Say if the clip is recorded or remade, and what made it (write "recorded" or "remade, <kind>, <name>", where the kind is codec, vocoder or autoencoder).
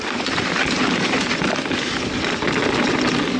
recorded